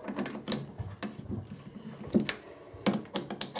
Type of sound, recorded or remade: recorded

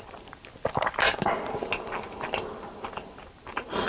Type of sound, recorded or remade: recorded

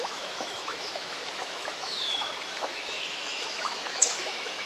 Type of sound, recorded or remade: remade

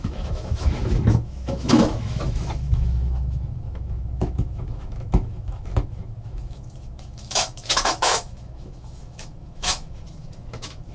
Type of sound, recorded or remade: remade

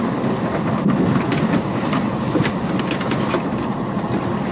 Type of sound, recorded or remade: recorded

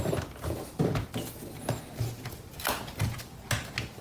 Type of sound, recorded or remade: recorded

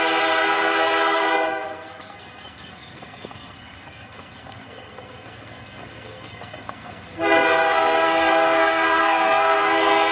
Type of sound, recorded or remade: remade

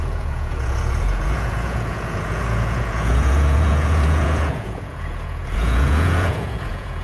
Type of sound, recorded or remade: remade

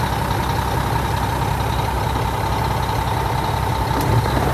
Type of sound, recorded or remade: recorded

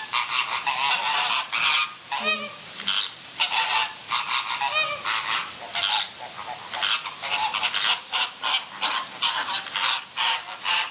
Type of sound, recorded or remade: recorded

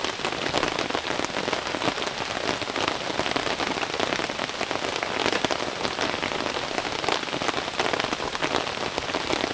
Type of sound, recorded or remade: recorded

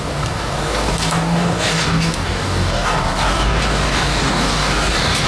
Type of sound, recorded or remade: remade